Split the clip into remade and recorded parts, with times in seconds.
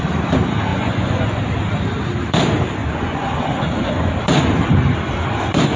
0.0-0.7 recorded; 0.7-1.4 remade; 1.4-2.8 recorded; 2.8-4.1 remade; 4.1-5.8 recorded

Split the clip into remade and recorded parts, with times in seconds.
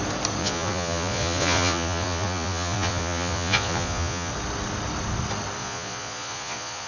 0.0-0.4 recorded; 0.4-4.3 remade; 4.3-5.6 recorded; 5.6-6.9 remade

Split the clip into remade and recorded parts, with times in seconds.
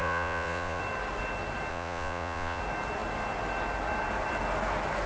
0.0-0.8 remade; 0.8-1.7 recorded; 1.7-2.6 remade; 2.6-5.1 recorded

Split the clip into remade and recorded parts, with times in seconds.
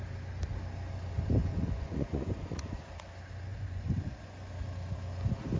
0.0-1.4 recorded; 1.4-2.8 remade; 2.8-3.5 recorded; 3.5-4.5 remade; 4.5-5.6 recorded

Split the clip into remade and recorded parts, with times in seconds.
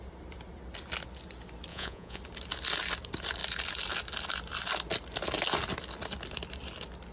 0.0-1.7 recorded; 1.7-2.2 remade; 2.2-7.1 recorded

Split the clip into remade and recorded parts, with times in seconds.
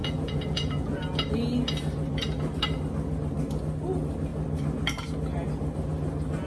0.0-1.0 remade; 1.0-6.5 recorded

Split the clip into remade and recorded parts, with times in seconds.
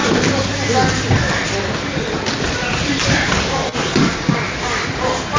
0.0-5.4 recorded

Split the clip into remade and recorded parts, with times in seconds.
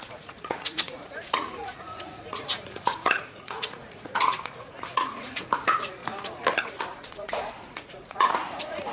0.0-6.0 remade; 6.0-6.6 recorded; 6.6-8.9 remade